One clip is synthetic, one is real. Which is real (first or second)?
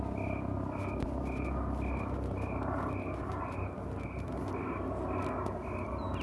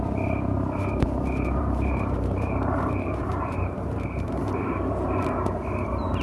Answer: first